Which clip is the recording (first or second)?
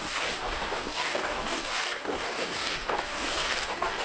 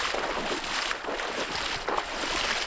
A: second